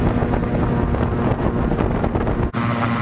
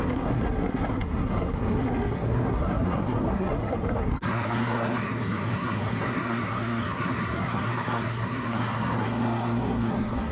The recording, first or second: first